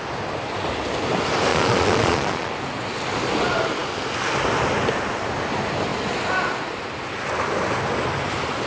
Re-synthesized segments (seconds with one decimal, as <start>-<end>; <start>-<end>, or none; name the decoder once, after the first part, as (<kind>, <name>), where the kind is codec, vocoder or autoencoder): 1.5-2.5 (vocoder, Vocos)